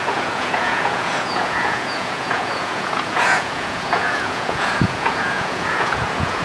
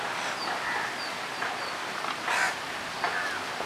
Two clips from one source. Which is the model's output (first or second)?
first